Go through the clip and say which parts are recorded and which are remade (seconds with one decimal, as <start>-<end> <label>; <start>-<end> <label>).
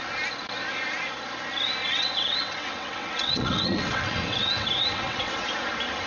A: 0.0-1.8 recorded; 1.8-5.5 remade; 5.5-6.1 recorded